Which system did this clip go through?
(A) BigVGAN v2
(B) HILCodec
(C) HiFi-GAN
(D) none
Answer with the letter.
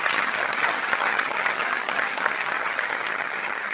C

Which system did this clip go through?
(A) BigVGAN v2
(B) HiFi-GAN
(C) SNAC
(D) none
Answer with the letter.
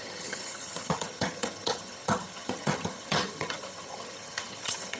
B